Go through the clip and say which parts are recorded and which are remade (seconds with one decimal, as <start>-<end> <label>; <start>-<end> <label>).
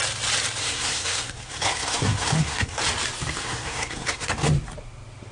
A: 0.0-0.6 recorded; 0.6-2.8 remade; 2.8-3.4 recorded; 3.4-4.3 remade; 4.3-5.3 recorded